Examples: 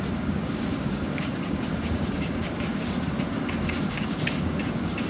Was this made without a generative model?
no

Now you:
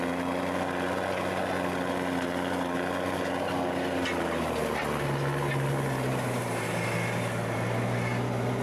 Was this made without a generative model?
yes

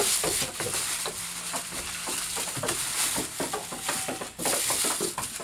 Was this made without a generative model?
yes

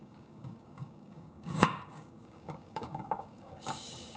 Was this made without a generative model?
no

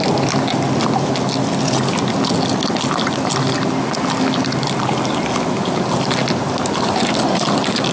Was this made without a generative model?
yes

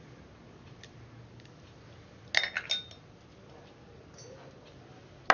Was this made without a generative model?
yes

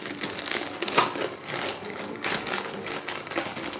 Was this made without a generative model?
no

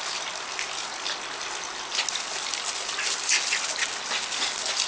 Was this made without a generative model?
yes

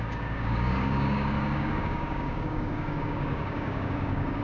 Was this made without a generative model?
no